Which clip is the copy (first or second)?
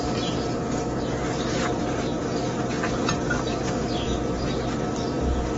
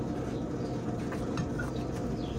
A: second